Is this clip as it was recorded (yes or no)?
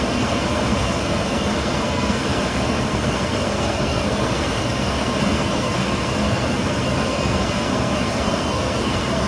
no